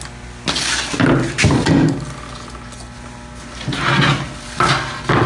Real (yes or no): yes